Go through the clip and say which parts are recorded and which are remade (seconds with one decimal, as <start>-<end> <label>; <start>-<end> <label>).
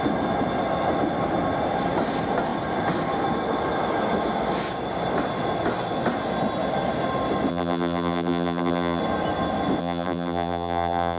0.0-7.5 recorded; 7.5-9.0 remade; 9.0-9.8 recorded; 9.8-11.2 remade